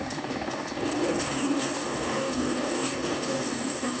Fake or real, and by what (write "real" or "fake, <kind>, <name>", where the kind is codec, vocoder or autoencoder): fake, codec, DAC